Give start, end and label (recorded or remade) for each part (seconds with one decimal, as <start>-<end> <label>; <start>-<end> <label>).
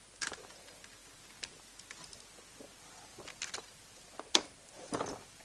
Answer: 0.0-3.1 recorded; 3.1-5.4 remade